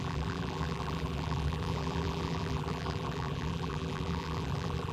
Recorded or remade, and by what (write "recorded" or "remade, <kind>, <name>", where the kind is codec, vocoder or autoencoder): remade, vocoder, BigVGAN v2